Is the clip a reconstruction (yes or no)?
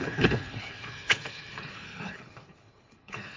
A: yes